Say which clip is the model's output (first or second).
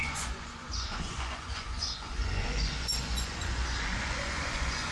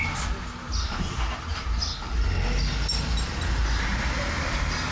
first